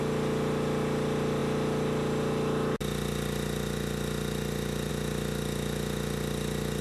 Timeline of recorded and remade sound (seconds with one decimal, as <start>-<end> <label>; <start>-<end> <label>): 0.0-6.8 recorded